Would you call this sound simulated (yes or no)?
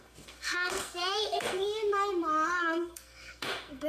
yes